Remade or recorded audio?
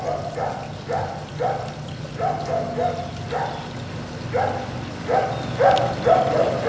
recorded